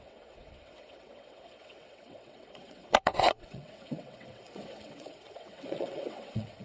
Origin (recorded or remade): remade